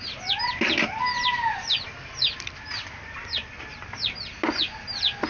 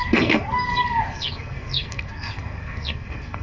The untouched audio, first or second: first